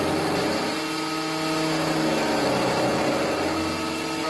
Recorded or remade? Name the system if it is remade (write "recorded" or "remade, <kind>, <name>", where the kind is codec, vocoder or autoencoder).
recorded